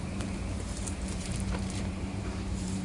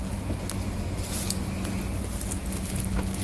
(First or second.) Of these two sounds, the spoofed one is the first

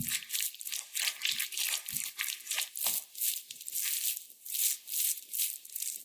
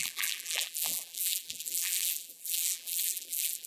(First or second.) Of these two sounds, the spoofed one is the second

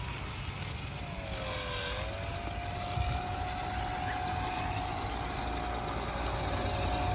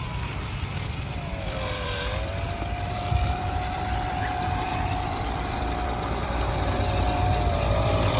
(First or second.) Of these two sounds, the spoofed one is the second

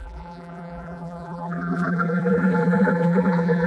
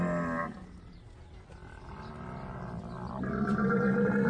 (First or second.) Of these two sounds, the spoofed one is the first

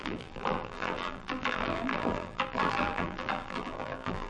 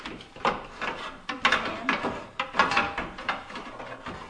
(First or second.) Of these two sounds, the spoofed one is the first